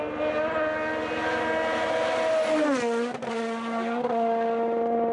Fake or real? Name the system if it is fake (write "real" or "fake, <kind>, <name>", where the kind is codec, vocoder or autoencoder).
real